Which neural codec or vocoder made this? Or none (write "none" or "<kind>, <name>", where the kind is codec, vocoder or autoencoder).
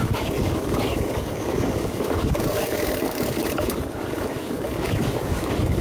codec, DAC